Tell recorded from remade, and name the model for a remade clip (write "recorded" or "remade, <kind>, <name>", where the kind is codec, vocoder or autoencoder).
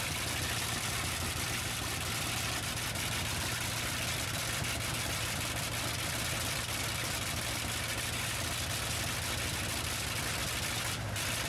recorded